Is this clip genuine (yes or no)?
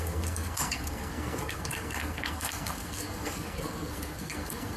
no